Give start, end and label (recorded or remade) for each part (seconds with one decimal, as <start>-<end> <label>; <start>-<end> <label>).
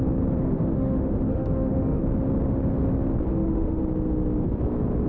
0.0-0.4 recorded; 0.4-2.0 remade; 2.0-3.3 recorded; 3.3-3.8 remade; 3.8-5.1 recorded